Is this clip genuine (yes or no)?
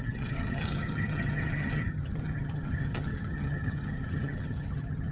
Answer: no